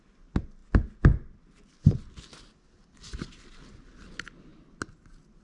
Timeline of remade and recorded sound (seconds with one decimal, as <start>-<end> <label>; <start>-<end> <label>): 0.0-5.4 recorded